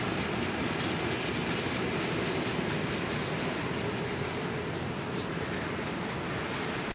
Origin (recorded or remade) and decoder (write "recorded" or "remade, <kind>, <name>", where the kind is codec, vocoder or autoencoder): recorded